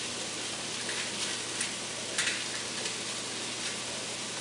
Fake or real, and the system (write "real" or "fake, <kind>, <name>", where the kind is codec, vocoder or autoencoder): real